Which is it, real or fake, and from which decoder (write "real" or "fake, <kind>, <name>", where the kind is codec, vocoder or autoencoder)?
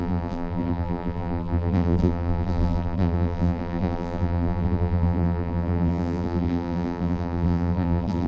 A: fake, vocoder, BigVGAN v2